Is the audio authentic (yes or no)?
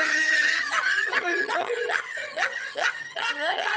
no